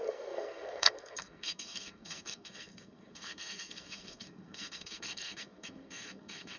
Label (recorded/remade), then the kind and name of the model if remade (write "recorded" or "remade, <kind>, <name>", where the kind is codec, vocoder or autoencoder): remade, codec, SNAC